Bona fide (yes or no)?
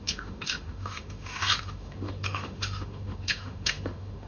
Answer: no